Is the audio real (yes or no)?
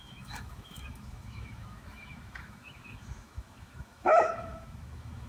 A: no